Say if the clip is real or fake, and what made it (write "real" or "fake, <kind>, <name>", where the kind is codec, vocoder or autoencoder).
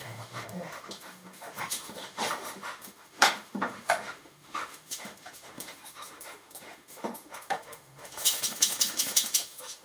fake, autoencoder, DAC-VAE